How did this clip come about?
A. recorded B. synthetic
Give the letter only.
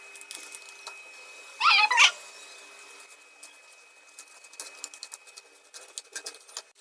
A